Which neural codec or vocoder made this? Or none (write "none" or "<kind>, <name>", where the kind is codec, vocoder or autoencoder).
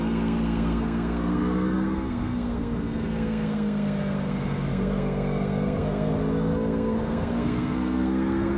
codec, SNAC